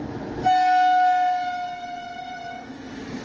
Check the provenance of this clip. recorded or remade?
recorded